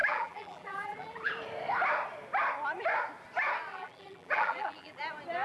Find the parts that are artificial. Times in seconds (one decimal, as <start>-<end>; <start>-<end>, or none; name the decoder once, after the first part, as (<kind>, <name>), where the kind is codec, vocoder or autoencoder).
0.0-1.3 (vocoder, BigVGAN v2); 3.7-5.0